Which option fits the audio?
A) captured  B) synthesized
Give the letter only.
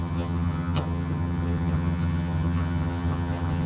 B